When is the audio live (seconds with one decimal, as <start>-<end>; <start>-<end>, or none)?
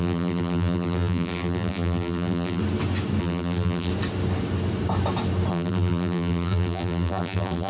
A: 2.6-3.2; 3.9-5.5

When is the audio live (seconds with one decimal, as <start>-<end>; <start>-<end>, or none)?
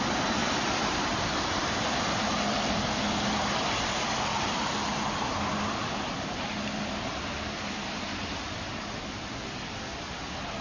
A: 0.0-0.4; 1.2-10.6